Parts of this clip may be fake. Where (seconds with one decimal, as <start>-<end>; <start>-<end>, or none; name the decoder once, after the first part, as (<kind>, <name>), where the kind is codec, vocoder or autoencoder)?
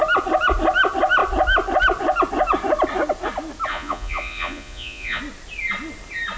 3.7-5.2 (vocoder, Vocos)